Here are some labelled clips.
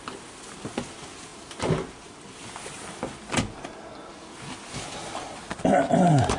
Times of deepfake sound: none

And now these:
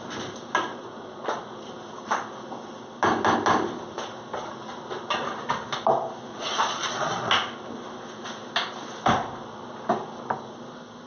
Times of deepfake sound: 0.7-1.4 (vocoder, Vocos); 6.3-7.3